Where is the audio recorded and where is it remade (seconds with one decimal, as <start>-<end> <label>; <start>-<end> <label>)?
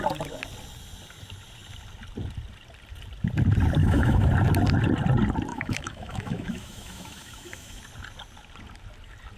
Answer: 0.0-3.8 recorded; 3.8-4.3 remade; 4.3-5.5 recorded; 5.5-7.8 remade; 7.8-9.4 recorded